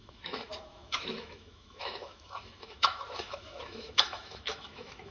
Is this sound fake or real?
fake